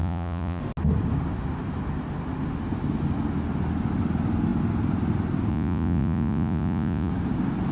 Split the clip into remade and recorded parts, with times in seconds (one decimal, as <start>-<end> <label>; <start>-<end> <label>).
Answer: 0.0-0.6 remade; 0.6-5.5 recorded; 5.5-7.1 remade; 7.1-7.7 recorded